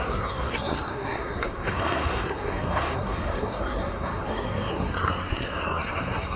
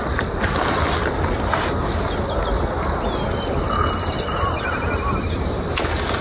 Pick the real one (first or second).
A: second